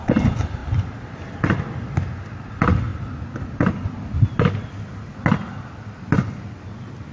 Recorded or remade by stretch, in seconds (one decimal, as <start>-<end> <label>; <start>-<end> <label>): 0.0-7.1 recorded